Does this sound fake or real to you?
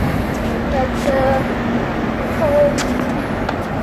real